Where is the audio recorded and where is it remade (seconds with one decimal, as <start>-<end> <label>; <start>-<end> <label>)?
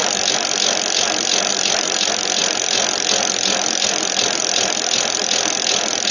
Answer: 0.0-6.1 recorded